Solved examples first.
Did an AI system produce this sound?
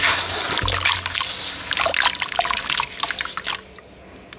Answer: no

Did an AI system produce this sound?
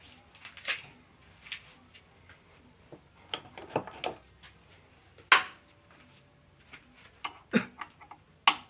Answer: no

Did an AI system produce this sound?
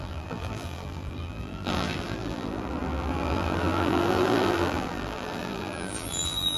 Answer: yes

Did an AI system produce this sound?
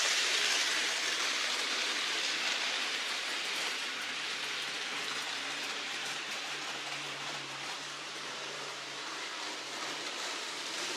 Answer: yes